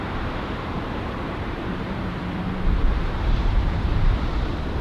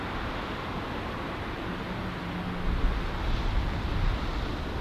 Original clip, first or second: second